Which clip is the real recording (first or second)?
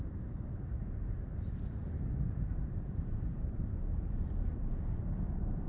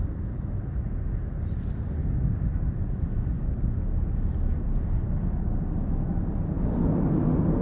second